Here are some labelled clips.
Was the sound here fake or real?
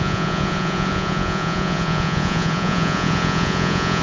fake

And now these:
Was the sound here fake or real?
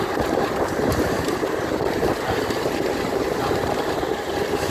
fake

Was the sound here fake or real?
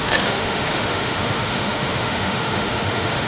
fake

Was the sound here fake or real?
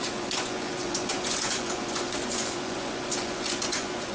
fake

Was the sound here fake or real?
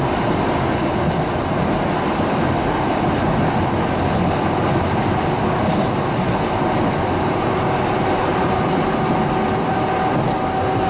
real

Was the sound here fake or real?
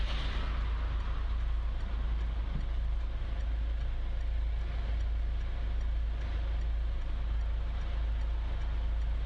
real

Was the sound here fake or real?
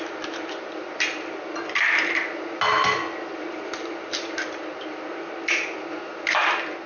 real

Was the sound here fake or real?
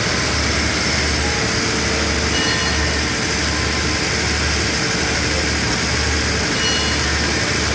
real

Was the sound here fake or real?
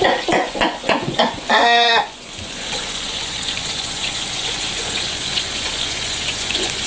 fake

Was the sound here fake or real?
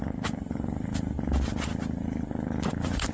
real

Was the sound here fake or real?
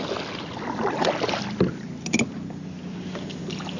real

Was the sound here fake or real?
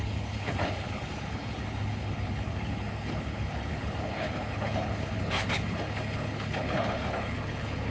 fake